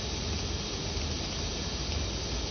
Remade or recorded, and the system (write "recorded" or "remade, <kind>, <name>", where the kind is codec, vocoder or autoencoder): recorded